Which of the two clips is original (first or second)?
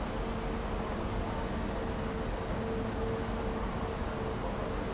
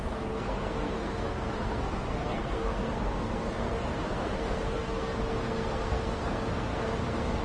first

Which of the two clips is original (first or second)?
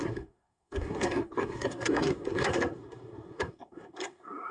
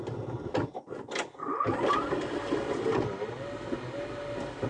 second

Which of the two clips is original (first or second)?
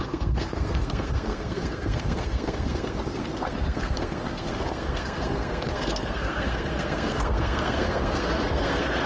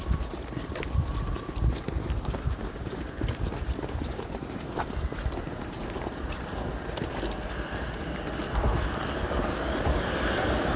second